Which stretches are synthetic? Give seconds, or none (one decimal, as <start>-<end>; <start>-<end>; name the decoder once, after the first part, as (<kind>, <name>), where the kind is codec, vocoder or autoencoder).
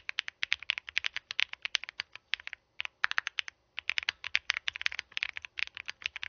none